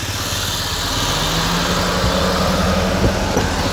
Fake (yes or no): no